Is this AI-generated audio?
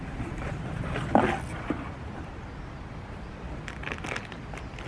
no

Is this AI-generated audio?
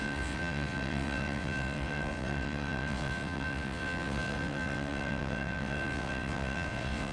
yes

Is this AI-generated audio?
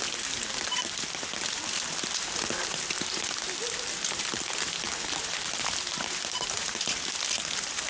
no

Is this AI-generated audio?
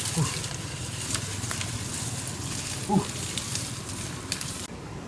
no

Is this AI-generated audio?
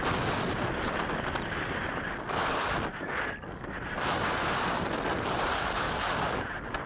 no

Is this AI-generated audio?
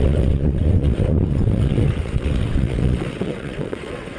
yes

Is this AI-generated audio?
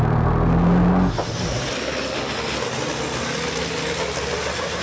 no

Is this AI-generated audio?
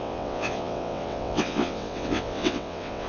yes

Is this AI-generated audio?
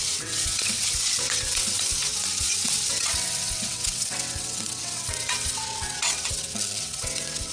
yes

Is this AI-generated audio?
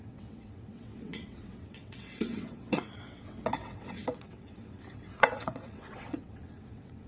yes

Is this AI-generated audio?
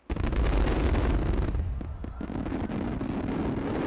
no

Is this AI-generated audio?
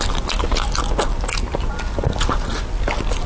no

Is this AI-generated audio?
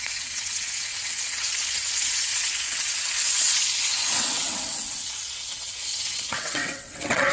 yes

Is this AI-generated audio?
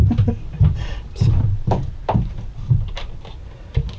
no